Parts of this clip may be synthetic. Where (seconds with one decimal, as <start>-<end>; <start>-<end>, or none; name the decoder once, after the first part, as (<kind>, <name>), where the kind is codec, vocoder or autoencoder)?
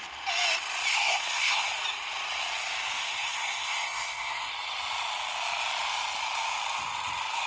0.9-1.7 (codec, SNAC); 3.0-4.5